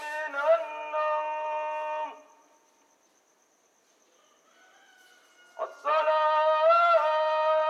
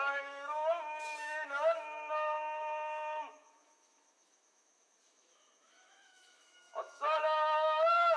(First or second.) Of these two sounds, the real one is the first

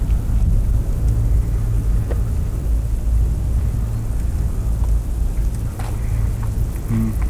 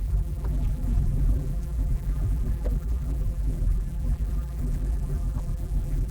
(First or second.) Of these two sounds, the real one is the first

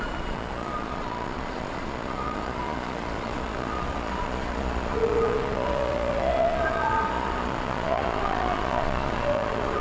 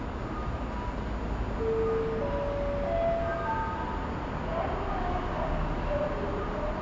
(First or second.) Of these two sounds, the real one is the second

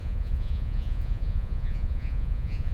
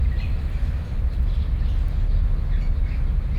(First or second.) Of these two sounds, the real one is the second